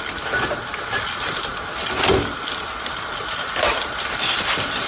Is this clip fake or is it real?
real